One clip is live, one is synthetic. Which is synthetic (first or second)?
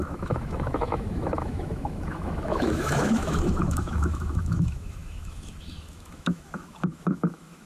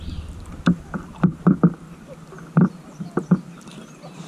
first